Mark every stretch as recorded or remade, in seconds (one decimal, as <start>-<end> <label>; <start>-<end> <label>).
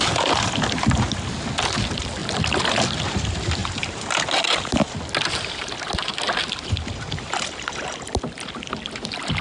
0.0-3.6 recorded; 3.6-4.2 remade; 4.2-9.4 recorded